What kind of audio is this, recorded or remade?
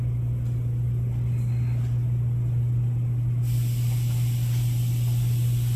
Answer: recorded